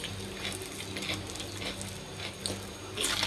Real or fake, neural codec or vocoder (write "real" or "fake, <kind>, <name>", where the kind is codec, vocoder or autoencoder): real